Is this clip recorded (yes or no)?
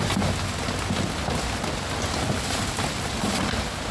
yes